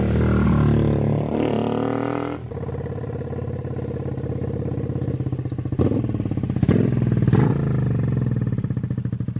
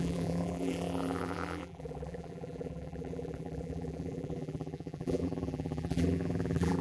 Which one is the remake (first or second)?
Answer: second